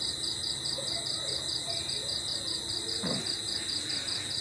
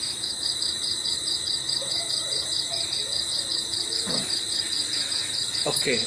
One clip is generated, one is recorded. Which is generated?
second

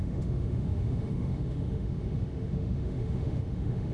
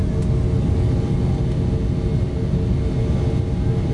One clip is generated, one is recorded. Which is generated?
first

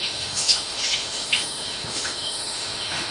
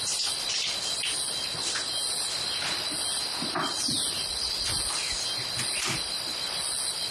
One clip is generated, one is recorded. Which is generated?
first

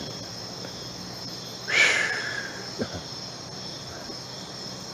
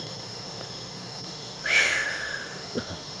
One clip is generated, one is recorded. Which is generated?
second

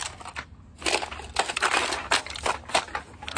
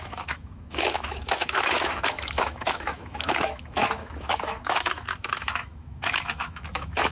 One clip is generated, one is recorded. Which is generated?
second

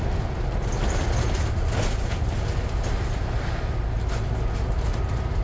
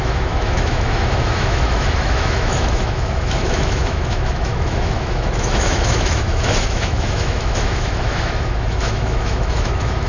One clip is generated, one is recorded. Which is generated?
second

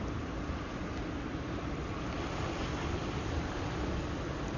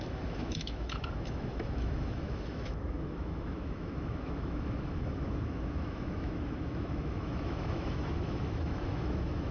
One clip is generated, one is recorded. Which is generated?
second